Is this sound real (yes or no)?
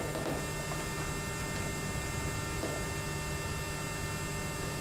yes